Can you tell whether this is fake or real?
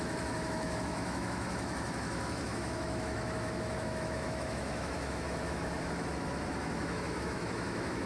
fake